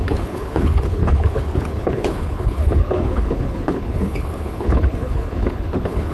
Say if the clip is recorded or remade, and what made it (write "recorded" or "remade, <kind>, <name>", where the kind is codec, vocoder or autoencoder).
remade, codec, HILCodec